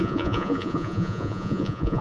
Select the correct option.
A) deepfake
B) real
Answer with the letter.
A